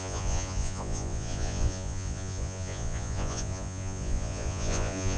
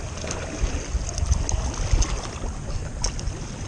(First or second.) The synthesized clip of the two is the first